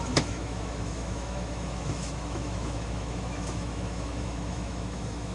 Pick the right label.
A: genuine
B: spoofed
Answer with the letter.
B